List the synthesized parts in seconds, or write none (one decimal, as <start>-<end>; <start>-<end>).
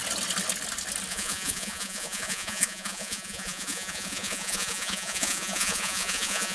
1.1-6.5